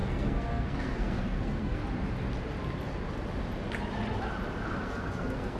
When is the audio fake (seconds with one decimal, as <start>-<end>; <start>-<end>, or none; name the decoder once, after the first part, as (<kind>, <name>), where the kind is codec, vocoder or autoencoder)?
0.0-1.8 (codec, SNAC); 4.7-5.6